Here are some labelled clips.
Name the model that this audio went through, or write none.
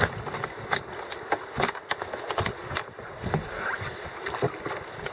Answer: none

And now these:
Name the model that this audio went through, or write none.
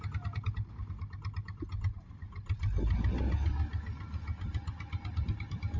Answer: none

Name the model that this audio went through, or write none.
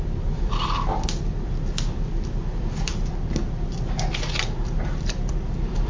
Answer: none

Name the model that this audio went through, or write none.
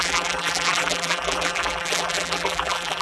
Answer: vocoder, BigVGAN v2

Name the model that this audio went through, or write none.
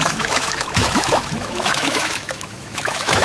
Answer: autoencoder, DAC-VAE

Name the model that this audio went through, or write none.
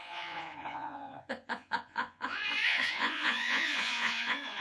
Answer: vocoder, Vocos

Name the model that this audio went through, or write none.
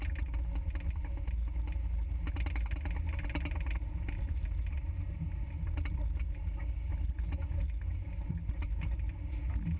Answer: none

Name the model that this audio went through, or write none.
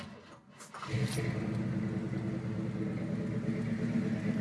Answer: none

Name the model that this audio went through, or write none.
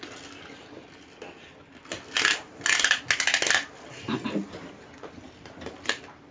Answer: none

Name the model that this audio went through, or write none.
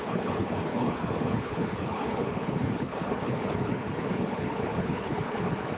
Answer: codec, HILCodec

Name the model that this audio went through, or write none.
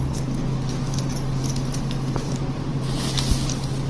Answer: none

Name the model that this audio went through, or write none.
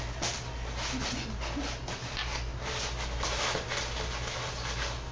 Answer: none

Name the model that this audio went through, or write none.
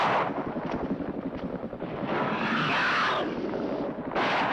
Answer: none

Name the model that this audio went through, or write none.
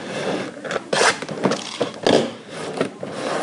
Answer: none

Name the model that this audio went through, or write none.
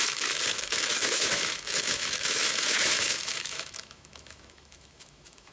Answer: autoencoder, DAC-VAE